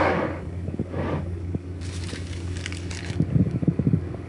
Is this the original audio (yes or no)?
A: no